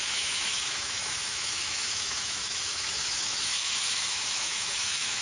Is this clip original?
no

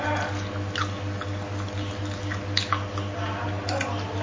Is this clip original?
yes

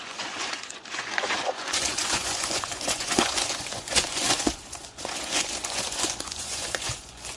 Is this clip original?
no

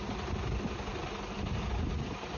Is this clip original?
yes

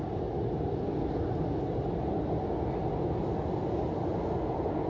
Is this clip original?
yes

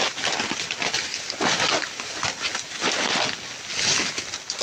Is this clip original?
yes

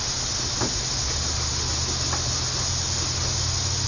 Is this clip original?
yes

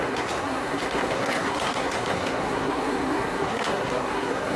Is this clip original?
no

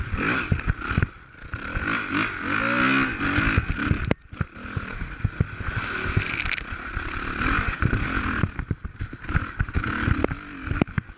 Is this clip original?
yes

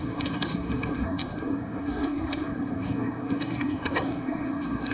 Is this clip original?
no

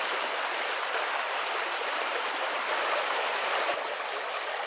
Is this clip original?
yes